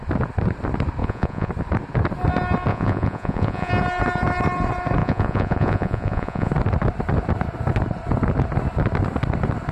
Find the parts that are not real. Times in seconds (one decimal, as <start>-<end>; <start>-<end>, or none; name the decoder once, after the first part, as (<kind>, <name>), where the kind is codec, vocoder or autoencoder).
1.0-1.5 (vocoder, Vocos); 2.7-3.7; 5.0-6.5